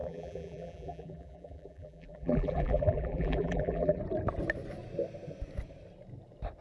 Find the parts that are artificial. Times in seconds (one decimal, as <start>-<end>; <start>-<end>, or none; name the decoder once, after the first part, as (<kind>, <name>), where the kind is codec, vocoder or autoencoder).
0.0-4.0 (vocoder, BigVGAN v2)